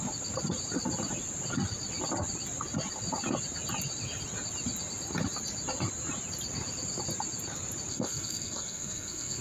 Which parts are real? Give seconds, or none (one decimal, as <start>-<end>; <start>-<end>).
0.0-7.9

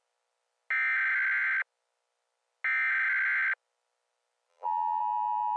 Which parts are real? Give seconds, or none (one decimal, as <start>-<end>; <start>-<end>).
0.0-4.5; 5.0-5.6

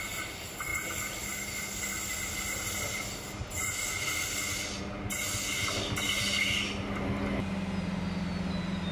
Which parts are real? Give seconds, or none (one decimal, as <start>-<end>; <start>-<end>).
0.0-8.9

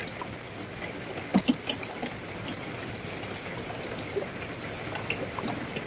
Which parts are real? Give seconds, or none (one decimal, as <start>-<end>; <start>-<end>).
0.0-5.9

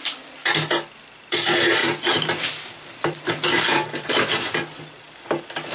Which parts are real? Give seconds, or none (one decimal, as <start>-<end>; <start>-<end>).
0.0-1.8; 4.1-5.7